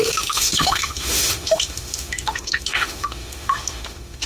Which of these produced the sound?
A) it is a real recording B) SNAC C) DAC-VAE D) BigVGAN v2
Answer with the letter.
C